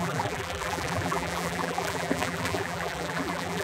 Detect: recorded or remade remade